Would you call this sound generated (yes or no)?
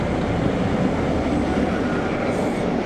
no